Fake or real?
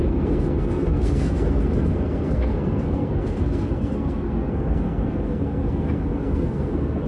fake